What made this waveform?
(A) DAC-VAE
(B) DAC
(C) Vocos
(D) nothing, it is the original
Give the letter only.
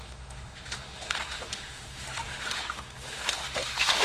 A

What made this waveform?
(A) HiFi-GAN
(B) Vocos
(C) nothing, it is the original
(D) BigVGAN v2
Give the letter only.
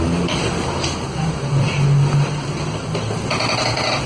C